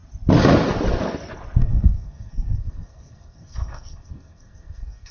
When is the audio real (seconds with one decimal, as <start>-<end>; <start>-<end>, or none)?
0.0-1.6